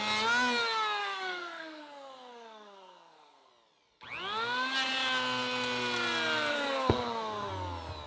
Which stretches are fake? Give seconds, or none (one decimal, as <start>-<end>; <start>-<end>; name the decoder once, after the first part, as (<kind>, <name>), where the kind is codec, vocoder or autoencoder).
1.0-3.5 (codec, SNAC); 6.5-7.5